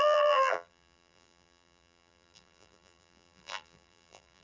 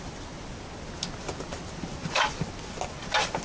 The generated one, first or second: first